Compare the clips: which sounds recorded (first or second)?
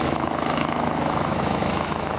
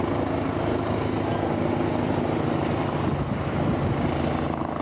second